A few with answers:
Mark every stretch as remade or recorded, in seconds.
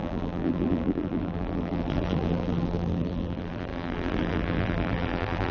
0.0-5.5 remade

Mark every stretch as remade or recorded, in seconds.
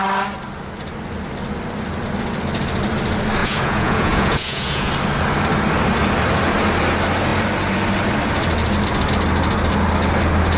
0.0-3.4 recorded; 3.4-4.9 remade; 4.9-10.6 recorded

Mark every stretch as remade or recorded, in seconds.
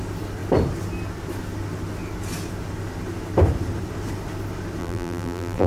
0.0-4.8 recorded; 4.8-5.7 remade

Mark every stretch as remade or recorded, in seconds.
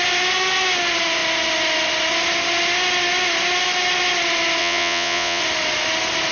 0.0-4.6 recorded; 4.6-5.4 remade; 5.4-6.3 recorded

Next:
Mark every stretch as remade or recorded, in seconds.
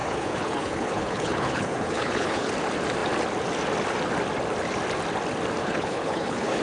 0.0-2.5 remade; 2.5-5.6 recorded; 5.6-6.6 remade